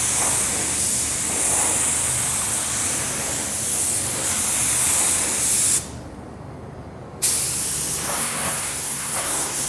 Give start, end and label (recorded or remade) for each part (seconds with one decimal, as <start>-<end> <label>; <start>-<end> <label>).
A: 0.0-8.2 recorded; 8.2-9.7 remade